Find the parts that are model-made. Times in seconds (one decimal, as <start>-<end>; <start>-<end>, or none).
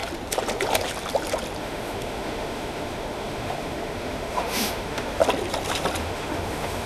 1.6-5.2; 6.0-6.9